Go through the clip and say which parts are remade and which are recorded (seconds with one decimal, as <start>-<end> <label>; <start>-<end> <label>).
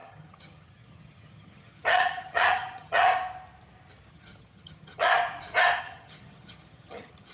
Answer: 0.0-3.1 remade; 3.1-4.1 recorded; 4.1-5.1 remade; 5.1-5.8 recorded; 5.8-7.3 remade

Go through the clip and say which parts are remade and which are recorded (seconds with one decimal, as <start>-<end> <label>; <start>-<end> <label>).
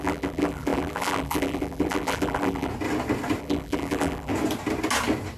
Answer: 0.0-2.7 remade; 2.7-3.4 recorded; 3.4-4.3 remade; 4.3-5.4 recorded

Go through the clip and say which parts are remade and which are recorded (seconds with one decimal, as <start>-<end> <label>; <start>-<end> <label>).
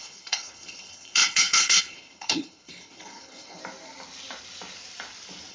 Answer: 0.0-3.6 remade; 3.6-5.5 recorded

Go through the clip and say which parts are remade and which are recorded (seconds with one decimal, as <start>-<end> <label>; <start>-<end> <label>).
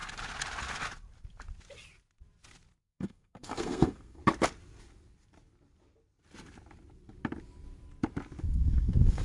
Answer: 0.0-2.8 recorded; 2.8-4.2 remade; 4.2-8.4 recorded; 8.4-9.2 remade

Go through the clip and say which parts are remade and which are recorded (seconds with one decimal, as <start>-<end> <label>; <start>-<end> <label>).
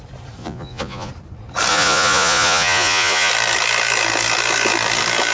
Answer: 0.0-0.4 recorded; 0.4-1.1 remade; 1.1-1.7 recorded; 1.7-3.3 remade; 3.3-5.3 recorded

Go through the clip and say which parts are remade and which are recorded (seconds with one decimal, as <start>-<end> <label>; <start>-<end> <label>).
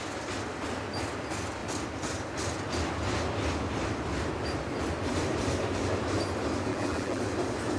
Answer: 0.0-6.7 recorded; 6.7-7.2 remade; 7.2-7.8 recorded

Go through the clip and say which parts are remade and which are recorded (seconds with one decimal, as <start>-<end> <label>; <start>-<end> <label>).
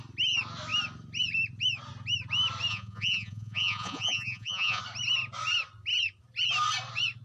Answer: 0.0-2.7 recorded; 2.7-4.8 remade; 4.8-7.2 recorded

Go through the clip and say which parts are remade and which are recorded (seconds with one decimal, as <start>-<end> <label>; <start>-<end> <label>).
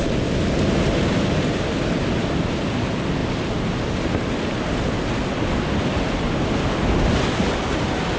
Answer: 0.0-8.2 recorded